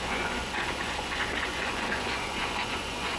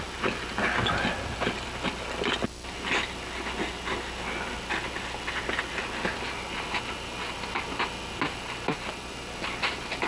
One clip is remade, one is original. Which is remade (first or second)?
first